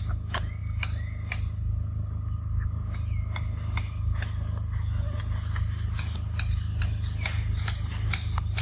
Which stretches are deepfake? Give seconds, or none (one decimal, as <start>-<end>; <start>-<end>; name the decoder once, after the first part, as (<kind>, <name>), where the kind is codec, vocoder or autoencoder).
none